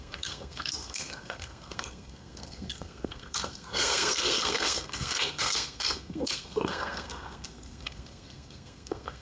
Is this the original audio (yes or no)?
no